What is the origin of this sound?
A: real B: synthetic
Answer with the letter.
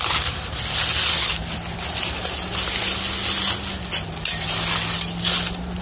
A